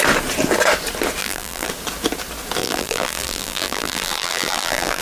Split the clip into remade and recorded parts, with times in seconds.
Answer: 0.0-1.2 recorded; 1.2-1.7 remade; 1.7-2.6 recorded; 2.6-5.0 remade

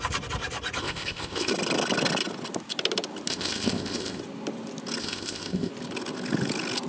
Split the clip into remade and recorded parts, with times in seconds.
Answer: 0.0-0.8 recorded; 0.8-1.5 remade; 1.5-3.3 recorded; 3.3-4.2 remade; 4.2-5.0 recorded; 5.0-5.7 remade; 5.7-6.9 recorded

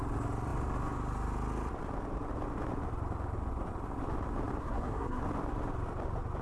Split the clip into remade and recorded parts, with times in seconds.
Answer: 0.0-4.6 recorded; 4.6-5.2 remade; 5.2-6.4 recorded

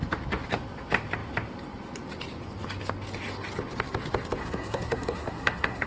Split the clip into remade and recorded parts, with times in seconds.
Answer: 0.0-4.4 recorded; 4.4-5.9 remade

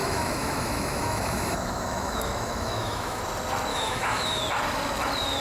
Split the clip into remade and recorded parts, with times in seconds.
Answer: 0.0-3.2 remade; 3.2-3.7 recorded; 3.7-4.4 remade; 4.4-5.4 recorded